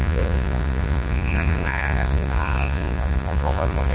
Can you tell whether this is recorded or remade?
remade